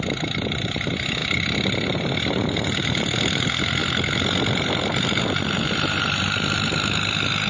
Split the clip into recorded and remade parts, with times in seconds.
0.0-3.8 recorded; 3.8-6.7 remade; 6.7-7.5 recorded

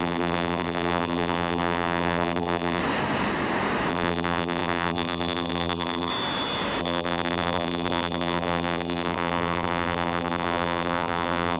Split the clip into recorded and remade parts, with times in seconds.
0.0-2.8 remade; 2.8-3.9 recorded; 3.9-6.1 remade; 6.1-6.8 recorded; 6.8-11.6 remade